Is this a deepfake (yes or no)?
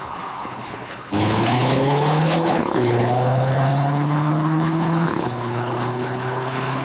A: yes